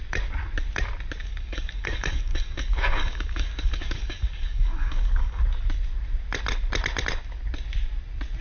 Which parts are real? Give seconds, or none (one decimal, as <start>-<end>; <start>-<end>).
0.0-1.2; 5.4-8.4